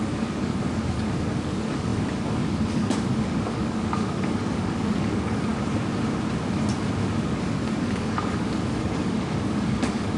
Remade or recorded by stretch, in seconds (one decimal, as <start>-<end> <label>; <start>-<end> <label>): 0.0-5.5 remade; 5.5-7.2 recorded; 7.2-10.2 remade